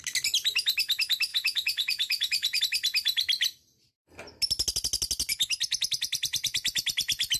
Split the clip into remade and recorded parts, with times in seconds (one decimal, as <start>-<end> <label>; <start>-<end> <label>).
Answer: 0.0-1.3 recorded; 1.3-2.6 remade; 2.6-7.4 recorded